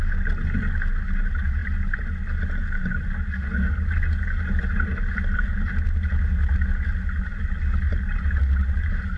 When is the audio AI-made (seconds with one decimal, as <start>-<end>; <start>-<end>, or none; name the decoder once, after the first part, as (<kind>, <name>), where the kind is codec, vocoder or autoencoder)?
none